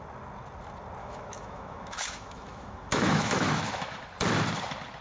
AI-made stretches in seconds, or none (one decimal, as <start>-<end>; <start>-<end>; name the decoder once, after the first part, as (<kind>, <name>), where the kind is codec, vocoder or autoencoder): 1.0-4.0 (autoencoder, DAC-VAE)

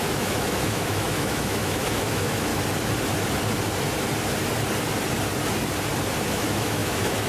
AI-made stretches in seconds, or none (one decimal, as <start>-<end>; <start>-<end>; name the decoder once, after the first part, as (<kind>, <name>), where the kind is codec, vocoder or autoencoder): 0.0-2.5 (autoencoder, DAC-VAE); 6.2-7.3